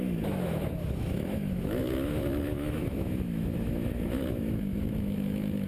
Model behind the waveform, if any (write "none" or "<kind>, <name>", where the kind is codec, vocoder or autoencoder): autoencoder, DAC-VAE